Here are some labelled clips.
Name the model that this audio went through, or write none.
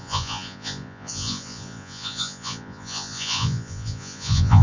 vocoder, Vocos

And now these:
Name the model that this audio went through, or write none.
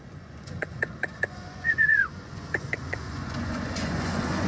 vocoder, Vocos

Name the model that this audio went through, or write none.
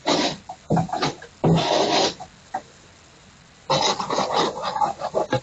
none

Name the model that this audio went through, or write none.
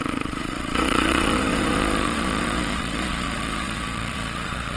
vocoder, Vocos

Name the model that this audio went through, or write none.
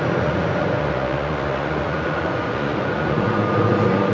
vocoder, Vocos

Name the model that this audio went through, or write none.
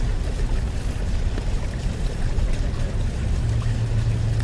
none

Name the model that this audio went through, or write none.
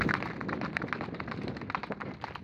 none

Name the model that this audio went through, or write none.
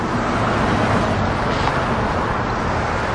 none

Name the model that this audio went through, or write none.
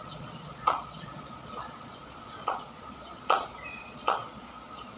vocoder, Vocos